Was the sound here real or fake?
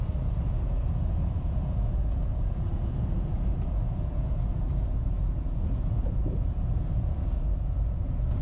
fake